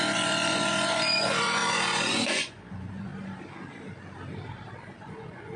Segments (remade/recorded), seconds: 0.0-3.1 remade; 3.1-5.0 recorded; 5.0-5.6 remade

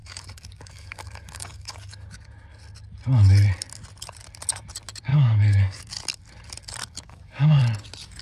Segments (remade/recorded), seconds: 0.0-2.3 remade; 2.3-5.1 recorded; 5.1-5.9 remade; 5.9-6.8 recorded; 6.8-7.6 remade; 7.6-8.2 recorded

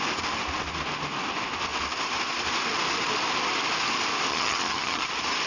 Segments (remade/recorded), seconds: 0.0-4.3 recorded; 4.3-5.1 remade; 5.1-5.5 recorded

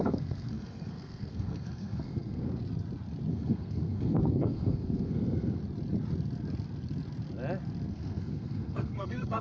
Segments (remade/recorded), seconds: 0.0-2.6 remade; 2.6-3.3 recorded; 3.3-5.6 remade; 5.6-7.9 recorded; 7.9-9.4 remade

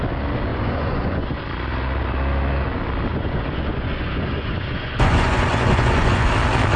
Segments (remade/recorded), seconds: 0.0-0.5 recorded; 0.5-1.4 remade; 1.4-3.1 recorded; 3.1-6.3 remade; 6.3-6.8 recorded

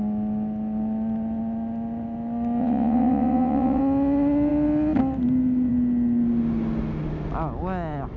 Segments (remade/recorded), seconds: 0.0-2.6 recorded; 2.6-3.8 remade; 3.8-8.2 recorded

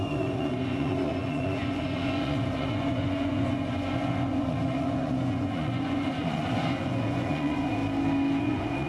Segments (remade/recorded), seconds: 0.0-7.8 remade; 7.8-8.4 recorded; 8.4-8.9 remade

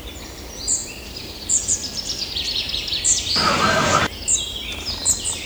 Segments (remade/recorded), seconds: 0.0-0.8 recorded; 0.8-2.0 remade; 2.0-3.1 recorded; 3.1-4.0 remade; 4.0-5.5 recorded